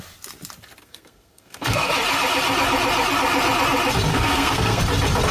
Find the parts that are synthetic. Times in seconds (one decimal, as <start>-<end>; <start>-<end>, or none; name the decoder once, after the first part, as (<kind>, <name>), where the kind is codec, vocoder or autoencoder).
0.8-1.9 (codec, SNAC); 4.1-4.8